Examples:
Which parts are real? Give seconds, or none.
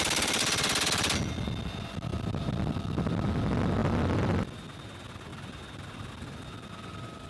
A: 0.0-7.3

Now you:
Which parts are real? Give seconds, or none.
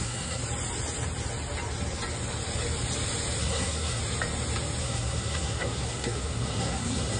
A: 0.4-3.4; 4.0-4.8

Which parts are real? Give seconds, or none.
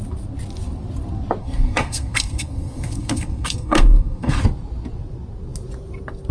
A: 0.0-1.4; 4.4-6.3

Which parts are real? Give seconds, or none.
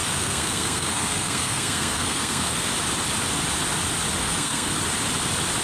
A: 2.7-4.2; 4.8-5.6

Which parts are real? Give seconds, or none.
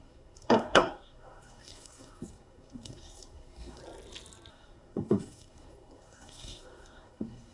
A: 3.8-4.5